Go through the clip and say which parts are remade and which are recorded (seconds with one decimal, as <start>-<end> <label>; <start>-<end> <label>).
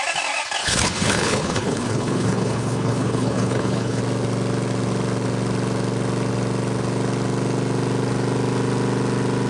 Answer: 0.0-0.6 recorded; 0.6-4.0 remade; 4.0-9.5 recorded